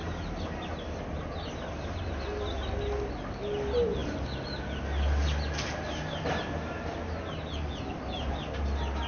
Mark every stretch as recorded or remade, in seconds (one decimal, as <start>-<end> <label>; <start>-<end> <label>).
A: 0.0-9.1 recorded